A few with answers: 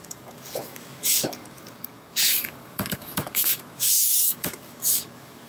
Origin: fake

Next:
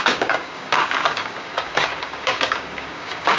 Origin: fake